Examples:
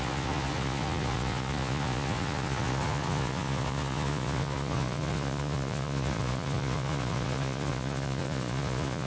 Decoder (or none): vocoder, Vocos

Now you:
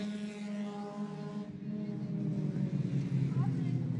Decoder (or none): none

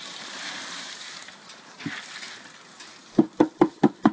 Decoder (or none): none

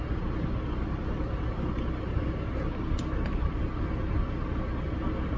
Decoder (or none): none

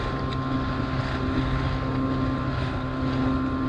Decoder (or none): none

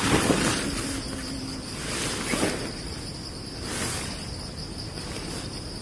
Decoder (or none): none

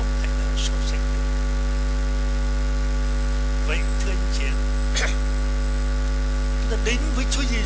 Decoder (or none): none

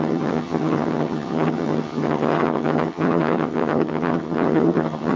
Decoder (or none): vocoder, HiFi-GAN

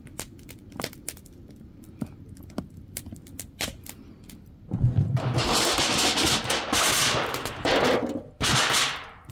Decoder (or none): none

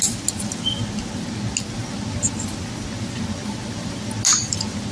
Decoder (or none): none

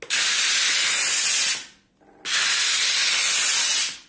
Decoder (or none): none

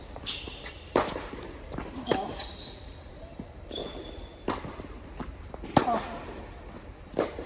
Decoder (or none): vocoder, BigVGAN v2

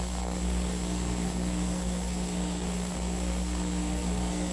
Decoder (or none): codec, SNAC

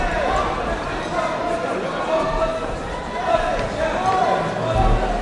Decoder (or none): none